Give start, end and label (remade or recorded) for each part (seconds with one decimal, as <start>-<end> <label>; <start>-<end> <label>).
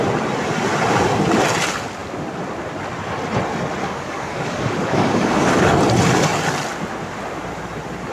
0.0-3.8 recorded; 3.8-5.8 remade; 5.8-8.1 recorded